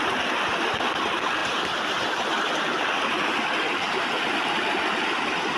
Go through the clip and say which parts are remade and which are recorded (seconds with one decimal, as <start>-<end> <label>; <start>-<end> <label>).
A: 0.0-1.4 recorded; 1.4-2.8 remade; 2.8-5.6 recorded